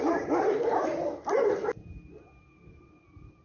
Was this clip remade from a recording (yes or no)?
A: no